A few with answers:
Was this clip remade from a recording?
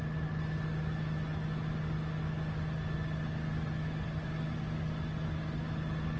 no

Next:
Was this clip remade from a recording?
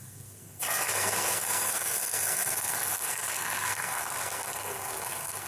yes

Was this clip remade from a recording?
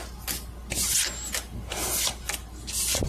no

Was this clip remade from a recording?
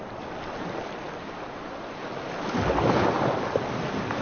no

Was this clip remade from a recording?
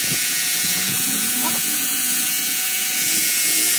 yes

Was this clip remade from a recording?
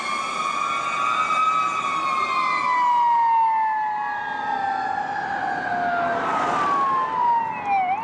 no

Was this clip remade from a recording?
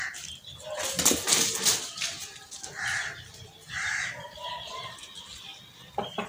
no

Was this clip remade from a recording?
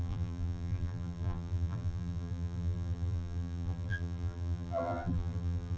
yes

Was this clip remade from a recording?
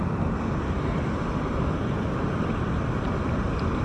no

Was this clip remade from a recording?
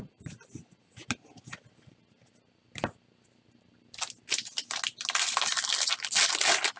no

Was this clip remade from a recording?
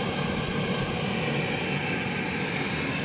no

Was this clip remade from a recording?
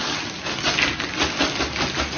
no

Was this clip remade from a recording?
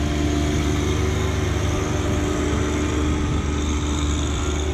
no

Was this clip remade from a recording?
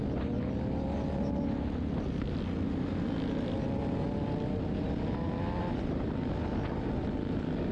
no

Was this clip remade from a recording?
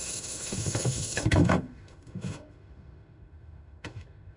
yes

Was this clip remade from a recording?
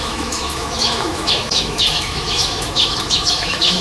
yes